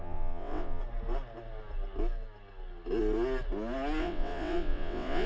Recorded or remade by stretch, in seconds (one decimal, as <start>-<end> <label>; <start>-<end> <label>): 0.0-0.8 remade; 0.8-4.0 recorded; 4.0-5.3 remade